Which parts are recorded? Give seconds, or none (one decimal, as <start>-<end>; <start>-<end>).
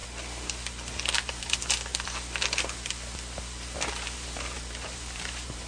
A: 0.0-1.3; 1.9-3.9